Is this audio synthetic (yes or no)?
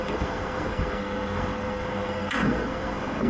yes